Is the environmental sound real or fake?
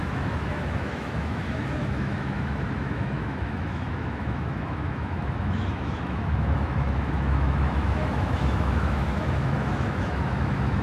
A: fake